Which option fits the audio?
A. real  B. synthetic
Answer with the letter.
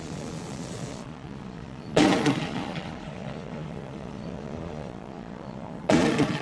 B